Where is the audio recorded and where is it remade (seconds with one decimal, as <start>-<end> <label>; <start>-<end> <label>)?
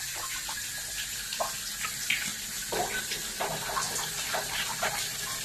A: 0.0-5.4 recorded